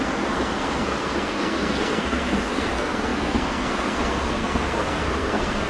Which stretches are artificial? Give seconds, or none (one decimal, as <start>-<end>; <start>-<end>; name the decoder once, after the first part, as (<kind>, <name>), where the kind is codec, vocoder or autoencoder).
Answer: 0.0-5.7 (codec, SNAC)